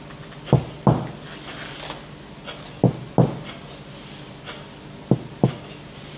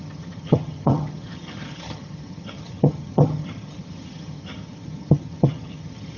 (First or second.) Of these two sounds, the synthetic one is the second